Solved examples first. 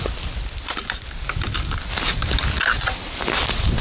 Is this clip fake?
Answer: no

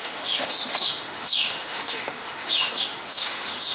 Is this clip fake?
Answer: yes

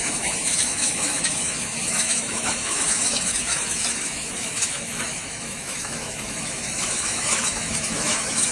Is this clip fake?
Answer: yes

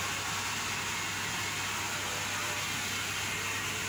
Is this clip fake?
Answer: no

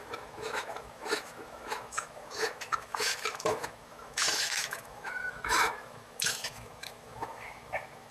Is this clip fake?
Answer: yes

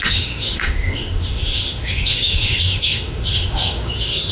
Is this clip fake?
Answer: yes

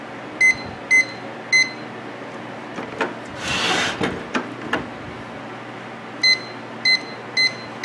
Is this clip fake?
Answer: no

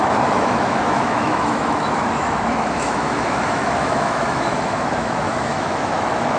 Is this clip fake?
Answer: yes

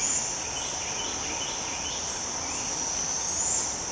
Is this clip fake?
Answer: no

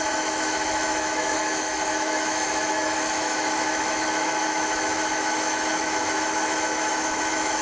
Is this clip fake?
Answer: yes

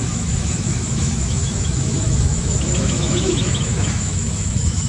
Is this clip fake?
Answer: yes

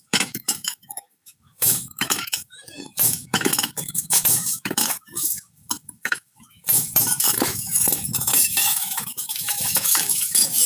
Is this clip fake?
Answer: yes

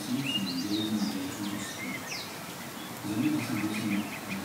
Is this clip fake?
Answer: no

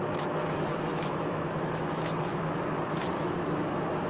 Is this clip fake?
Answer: yes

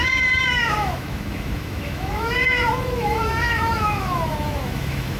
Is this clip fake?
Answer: yes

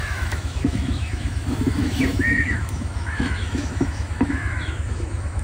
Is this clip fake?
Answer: yes